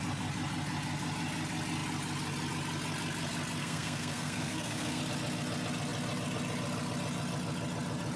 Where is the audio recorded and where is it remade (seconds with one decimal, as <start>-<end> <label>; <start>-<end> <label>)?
0.0-3.6 recorded; 3.6-5.0 remade; 5.0-8.2 recorded